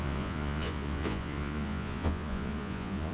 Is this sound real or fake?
fake